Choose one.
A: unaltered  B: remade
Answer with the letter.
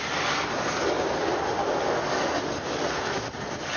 A